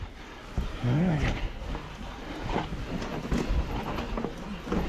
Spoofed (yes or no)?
no